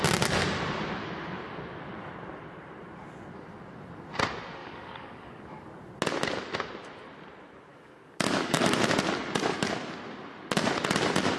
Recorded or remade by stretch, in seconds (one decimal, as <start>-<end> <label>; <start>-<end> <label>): 0.0-4.6 recorded; 4.6-5.4 remade; 5.4-7.7 recorded; 7.7-8.9 remade; 8.9-11.4 recorded